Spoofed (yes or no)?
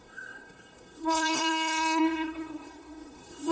yes